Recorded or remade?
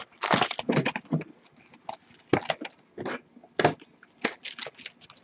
recorded